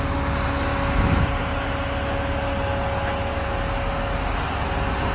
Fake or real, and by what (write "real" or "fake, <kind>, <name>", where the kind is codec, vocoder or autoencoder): real